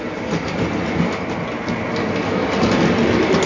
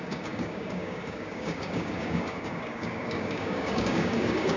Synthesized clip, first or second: second